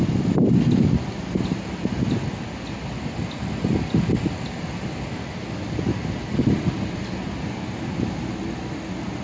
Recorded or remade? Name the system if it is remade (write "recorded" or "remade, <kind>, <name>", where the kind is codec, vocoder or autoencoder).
recorded